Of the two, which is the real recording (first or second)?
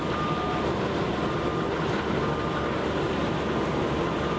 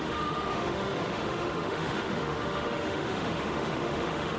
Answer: first